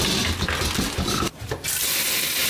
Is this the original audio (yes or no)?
yes